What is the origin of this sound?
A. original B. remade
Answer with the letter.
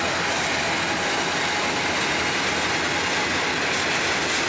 A